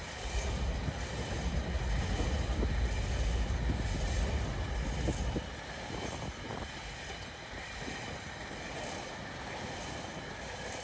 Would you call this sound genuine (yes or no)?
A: yes